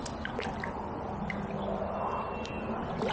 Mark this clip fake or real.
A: real